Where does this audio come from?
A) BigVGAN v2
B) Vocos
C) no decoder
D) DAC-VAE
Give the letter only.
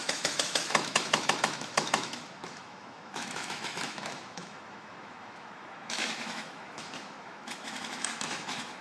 D